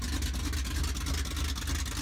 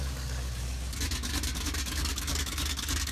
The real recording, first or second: first